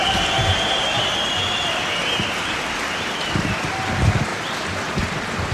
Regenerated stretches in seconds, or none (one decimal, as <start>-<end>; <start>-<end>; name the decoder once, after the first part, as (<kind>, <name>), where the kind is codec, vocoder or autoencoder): none

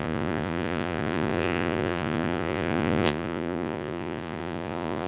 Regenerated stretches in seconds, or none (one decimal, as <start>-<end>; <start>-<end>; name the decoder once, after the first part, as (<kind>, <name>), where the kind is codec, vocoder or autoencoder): 0.0-5.1 (vocoder, Vocos)

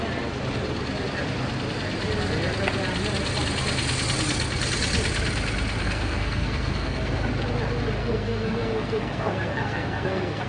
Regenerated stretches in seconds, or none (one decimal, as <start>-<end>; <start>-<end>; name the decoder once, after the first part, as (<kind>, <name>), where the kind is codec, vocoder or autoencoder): 5.8-7.3 (codec, SNAC); 8.0-10.5

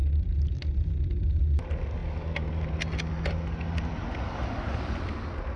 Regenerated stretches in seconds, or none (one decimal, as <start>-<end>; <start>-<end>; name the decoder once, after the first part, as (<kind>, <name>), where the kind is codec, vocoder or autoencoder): none

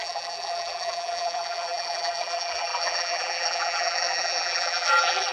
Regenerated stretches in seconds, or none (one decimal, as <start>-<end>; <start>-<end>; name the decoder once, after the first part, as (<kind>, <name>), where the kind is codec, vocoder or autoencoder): 0.0-5.3 (vocoder, BigVGAN v2)

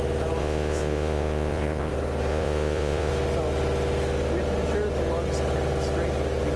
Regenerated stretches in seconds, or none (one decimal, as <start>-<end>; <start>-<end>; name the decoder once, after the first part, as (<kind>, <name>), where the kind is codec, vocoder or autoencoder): 0.4-1.9 (vocoder, Vocos); 2.3-3.1

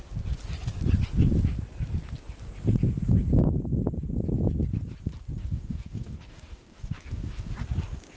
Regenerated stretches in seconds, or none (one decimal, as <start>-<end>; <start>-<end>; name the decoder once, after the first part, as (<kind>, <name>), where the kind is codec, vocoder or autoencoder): 5.4-7.5 (codec, DAC)

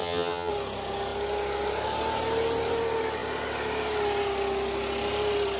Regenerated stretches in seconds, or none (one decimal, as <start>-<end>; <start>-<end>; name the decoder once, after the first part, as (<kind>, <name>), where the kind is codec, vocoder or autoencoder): 0.0-0.5 (vocoder, HiFi-GAN)